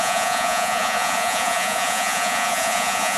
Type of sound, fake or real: fake